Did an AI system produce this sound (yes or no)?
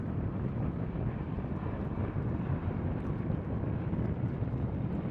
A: no